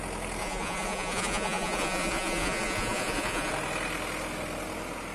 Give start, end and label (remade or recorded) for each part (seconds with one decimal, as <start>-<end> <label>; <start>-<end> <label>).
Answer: 0.0-0.4 recorded; 0.4-3.5 remade; 3.5-5.1 recorded